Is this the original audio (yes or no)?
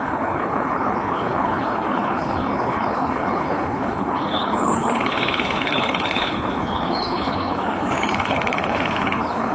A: no